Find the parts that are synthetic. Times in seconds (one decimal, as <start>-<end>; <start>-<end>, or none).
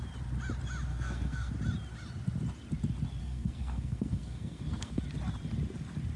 0.9-1.5; 3.2-5.0